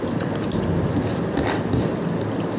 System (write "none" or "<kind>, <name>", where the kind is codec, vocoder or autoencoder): none